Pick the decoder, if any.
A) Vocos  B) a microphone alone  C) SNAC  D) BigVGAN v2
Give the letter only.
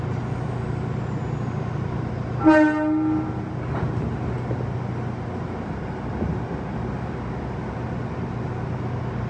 B